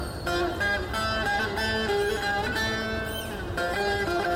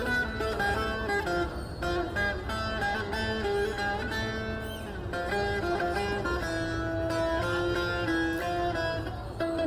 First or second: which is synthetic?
first